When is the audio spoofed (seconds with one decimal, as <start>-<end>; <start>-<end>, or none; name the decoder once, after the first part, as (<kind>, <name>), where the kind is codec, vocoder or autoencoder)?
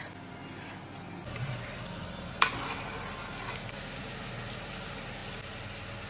none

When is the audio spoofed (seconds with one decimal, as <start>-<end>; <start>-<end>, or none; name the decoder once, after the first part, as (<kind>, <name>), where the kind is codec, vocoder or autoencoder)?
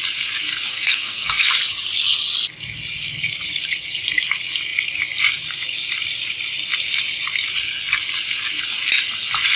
0.7-1.5 (codec, SNAC)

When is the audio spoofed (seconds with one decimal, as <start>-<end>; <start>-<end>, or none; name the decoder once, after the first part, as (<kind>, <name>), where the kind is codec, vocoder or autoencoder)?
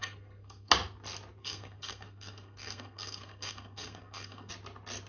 0.0-0.7 (codec, SNAC); 1.4-4.5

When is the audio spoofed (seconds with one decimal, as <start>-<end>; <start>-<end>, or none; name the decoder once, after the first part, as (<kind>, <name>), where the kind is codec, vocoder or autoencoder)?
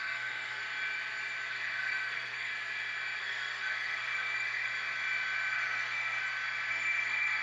0.0-0.6 (codec, SNAC); 1.5-2.5; 3.2-4.7; 5.5-6.2; 6.7-7.4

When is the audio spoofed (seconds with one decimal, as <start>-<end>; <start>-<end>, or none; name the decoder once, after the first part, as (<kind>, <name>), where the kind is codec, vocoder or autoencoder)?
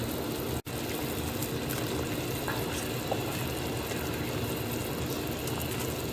none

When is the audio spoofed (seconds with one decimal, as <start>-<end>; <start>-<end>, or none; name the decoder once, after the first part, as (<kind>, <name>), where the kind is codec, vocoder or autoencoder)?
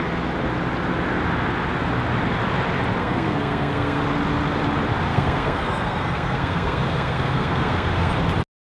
3.0-4.0 (codec, SNAC); 5.1-8.1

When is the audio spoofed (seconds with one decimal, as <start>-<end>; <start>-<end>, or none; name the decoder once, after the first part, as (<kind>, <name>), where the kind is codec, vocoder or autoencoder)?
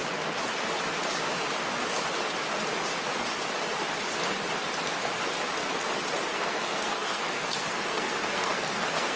6.3-9.2 (codec, SNAC)